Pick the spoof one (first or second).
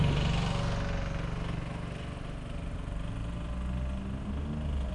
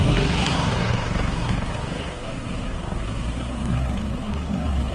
second